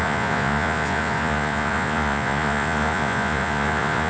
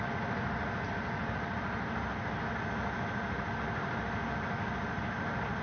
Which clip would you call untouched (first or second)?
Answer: second